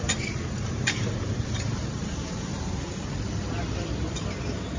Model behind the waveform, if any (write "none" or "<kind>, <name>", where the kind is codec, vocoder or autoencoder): vocoder, BigVGAN v2